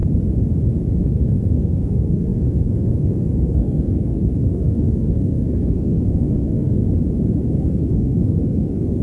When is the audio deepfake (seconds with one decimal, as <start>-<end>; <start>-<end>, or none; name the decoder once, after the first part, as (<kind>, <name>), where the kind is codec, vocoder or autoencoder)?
1.0-6.8 (codec, SNAC); 7.5-9.0